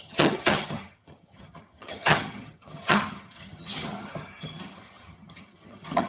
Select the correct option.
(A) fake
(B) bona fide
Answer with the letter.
A